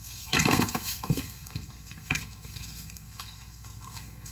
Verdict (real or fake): fake